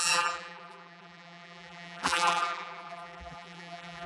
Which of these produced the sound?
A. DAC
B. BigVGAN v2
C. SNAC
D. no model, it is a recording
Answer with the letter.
B